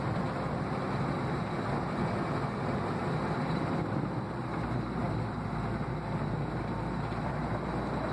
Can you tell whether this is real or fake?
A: real